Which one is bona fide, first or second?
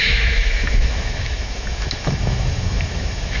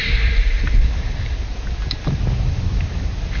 second